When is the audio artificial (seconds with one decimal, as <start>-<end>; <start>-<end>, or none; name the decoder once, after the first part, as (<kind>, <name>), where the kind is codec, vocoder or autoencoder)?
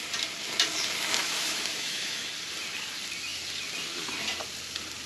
1.2-2.3 (autoencoder, DAC-VAE)